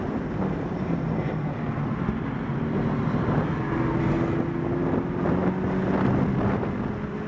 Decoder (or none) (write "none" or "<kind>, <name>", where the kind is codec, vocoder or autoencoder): none